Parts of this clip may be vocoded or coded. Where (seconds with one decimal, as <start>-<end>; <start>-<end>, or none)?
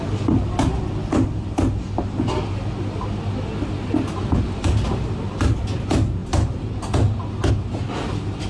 none